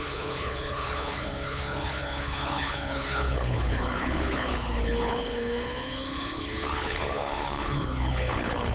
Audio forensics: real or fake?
fake